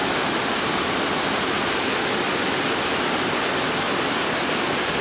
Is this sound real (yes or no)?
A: yes